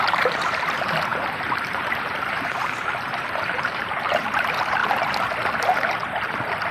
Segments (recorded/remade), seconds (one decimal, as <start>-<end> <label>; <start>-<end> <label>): 0.0-4.8 remade; 4.8-5.4 recorded; 5.4-6.0 remade; 6.0-6.7 recorded